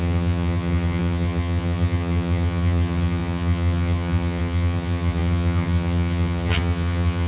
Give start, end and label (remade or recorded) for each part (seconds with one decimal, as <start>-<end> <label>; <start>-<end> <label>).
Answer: 0.0-7.3 remade

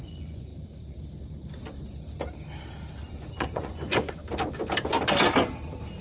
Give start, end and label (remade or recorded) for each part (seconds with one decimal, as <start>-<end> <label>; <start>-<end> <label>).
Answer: 0.0-0.5 remade; 0.5-3.1 recorded; 3.1-4.2 remade; 4.2-6.0 recorded